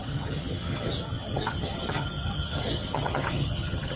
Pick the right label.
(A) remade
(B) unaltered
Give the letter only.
A